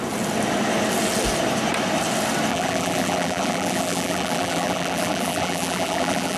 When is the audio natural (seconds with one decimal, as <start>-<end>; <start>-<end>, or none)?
0.0-2.5